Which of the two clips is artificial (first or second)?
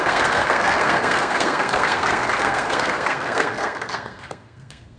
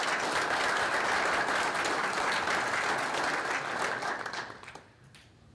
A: first